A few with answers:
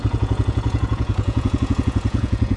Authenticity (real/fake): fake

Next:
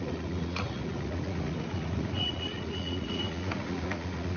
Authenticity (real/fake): fake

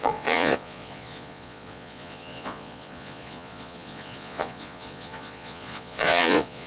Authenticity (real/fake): fake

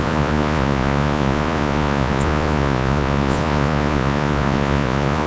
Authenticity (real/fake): fake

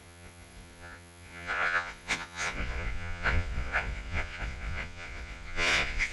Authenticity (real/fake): fake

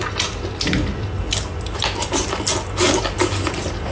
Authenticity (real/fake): real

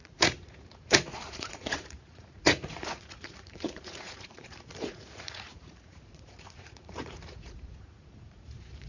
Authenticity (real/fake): fake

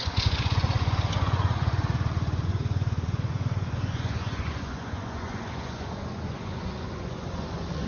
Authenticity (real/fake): fake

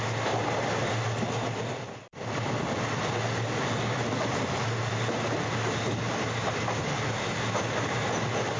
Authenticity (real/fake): real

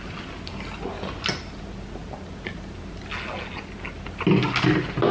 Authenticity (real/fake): real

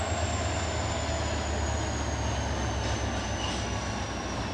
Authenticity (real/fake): real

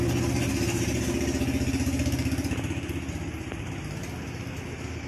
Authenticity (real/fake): real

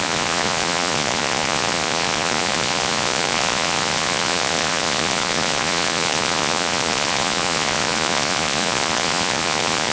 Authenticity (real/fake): fake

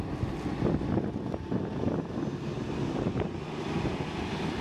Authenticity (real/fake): real